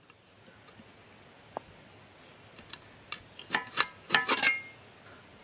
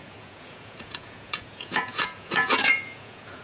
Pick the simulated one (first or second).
second